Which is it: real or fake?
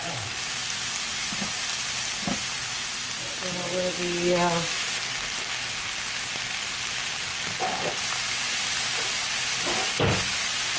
real